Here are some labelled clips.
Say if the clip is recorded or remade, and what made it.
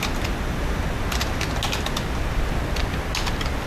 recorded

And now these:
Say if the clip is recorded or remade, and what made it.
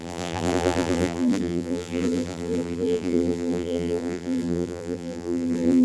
remade, vocoder, BigVGAN v2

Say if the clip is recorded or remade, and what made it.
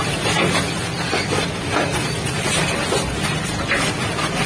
recorded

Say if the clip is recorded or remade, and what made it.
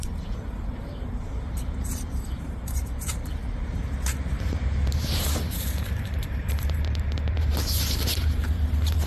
remade, vocoder, BigVGAN v2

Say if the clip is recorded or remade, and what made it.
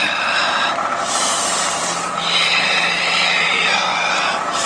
remade, vocoder, BigVGAN v2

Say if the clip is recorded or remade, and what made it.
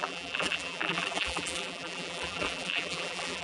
remade, vocoder, BigVGAN v2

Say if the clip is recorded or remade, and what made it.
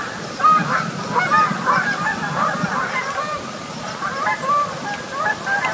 recorded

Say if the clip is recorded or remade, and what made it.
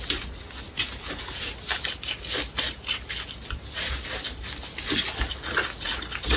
recorded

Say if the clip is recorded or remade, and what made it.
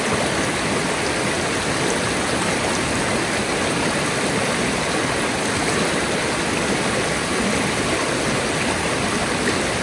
recorded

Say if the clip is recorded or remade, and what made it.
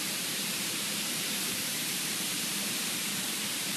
remade, vocoder, BigVGAN v2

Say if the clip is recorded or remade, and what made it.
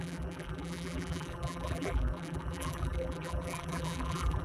remade, vocoder, BigVGAN v2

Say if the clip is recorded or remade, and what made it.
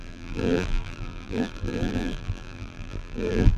remade, vocoder, BigVGAN v2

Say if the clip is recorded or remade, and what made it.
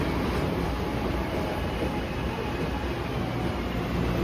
recorded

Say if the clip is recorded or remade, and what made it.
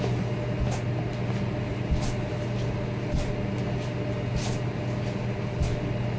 recorded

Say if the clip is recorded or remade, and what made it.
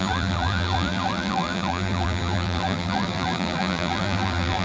remade, vocoder, BigVGAN v2